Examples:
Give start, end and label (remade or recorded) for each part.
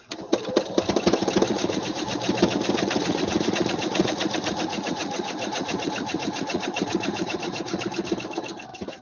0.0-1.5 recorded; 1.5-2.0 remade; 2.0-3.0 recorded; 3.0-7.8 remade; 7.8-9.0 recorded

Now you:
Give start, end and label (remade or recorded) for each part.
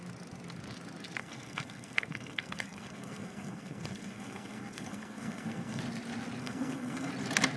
0.0-1.2 recorded; 1.2-5.8 remade; 5.8-6.4 recorded; 6.4-7.1 remade; 7.1-7.6 recorded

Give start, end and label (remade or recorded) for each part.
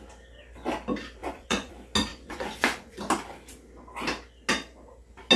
0.0-1.2 recorded; 1.2-1.7 remade; 1.7-2.1 recorded; 2.1-3.0 remade; 3.0-5.4 recorded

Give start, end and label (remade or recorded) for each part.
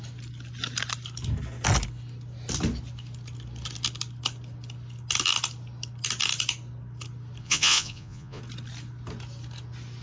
0.0-7.4 recorded; 7.4-8.4 remade; 8.4-10.0 recorded